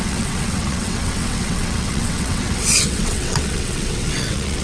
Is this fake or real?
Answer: fake